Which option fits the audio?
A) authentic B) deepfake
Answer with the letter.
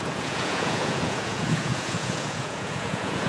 B